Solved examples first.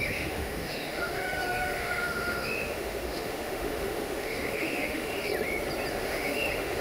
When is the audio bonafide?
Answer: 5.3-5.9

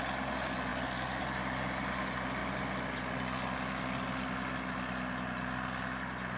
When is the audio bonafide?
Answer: 0.0-6.4